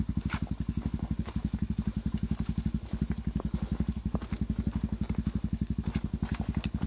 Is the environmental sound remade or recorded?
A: recorded